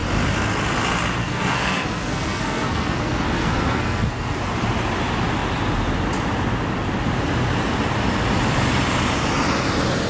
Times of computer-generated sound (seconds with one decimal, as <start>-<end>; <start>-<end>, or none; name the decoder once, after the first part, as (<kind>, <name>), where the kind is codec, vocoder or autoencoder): 1.2-4.4 (codec, SNAC)